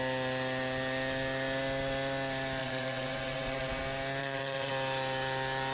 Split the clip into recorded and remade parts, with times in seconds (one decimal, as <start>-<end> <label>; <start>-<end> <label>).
0.0-2.6 recorded; 2.6-3.8 remade; 3.8-4.2 recorded; 4.2-4.7 remade; 4.7-5.7 recorded